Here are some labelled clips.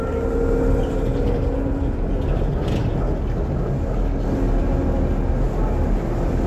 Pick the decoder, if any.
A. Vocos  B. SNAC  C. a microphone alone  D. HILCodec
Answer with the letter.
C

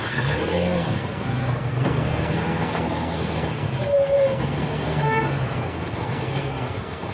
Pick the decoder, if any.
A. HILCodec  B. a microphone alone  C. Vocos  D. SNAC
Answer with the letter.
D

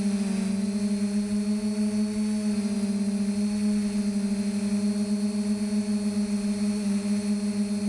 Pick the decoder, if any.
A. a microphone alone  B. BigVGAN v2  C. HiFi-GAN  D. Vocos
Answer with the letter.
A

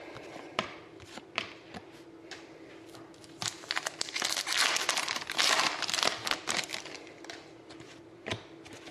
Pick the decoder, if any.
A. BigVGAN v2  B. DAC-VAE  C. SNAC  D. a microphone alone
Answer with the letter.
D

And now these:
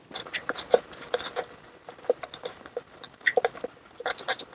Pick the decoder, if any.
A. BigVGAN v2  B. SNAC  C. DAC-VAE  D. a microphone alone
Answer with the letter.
A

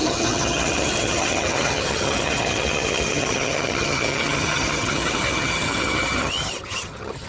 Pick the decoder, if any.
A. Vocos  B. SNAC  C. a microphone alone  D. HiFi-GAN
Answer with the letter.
D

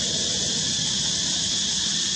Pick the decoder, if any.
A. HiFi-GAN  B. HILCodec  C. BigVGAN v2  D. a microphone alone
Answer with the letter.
D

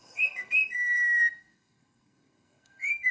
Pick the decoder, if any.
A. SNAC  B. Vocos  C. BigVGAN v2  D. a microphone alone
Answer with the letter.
A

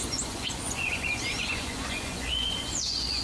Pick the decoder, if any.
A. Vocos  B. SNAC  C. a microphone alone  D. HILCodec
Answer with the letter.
A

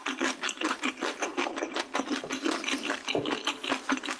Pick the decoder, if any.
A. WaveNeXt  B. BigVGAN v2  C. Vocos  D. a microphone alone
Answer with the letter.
D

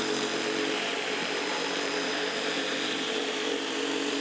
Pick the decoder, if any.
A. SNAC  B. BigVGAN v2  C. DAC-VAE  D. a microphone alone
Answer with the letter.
B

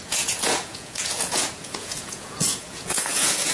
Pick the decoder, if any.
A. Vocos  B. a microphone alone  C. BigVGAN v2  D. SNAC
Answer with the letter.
A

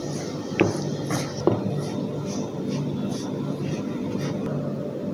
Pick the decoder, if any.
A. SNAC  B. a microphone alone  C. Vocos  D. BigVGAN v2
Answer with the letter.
B